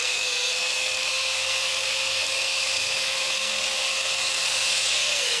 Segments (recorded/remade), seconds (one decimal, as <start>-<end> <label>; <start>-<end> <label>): 0.0-5.4 remade